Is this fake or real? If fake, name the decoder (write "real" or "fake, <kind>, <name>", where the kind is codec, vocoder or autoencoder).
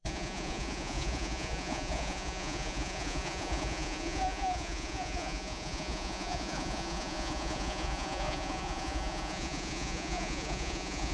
fake, vocoder, Vocos